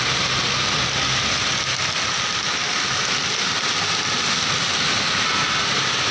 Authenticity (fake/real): real